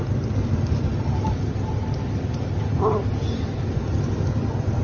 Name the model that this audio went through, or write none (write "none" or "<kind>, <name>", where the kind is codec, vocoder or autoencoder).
none